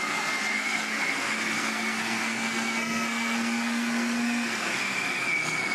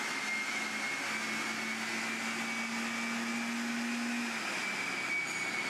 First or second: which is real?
second